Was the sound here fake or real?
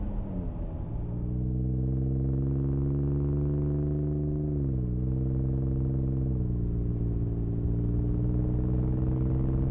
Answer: real